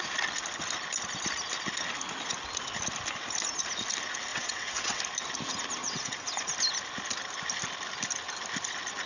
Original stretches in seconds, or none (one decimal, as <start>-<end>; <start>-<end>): 0.0-4.3; 5.0-5.8; 6.3-9.1